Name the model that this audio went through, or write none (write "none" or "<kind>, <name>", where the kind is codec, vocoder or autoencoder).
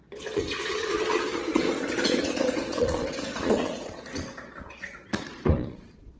vocoder, Vocos